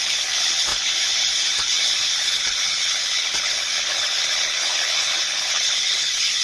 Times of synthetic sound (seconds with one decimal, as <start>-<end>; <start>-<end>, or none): 0.0-6.4